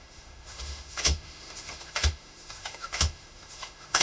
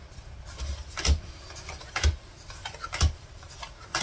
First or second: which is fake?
first